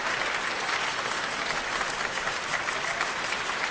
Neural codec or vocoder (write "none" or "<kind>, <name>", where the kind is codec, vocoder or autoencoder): none